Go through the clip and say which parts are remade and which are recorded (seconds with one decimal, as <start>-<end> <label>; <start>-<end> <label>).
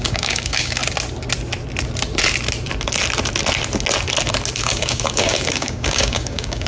0.0-0.8 remade; 0.8-4.6 recorded; 4.6-6.7 remade